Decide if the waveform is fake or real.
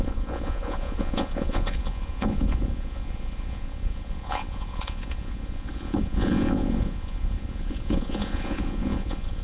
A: fake